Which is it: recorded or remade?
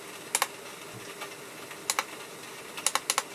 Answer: recorded